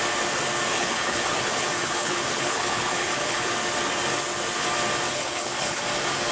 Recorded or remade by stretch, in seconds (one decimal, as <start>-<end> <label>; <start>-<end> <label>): 0.0-0.7 recorded; 0.7-3.5 remade; 3.5-5.1 recorded; 5.1-5.8 remade; 5.8-6.3 recorded